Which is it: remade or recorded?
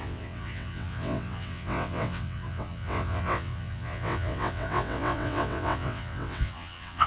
remade